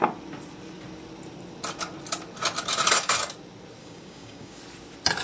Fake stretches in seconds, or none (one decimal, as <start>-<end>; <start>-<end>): 3.8-4.6